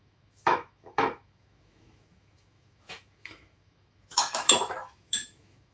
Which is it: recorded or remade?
remade